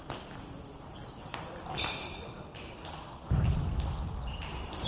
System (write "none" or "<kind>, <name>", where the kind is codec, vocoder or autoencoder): none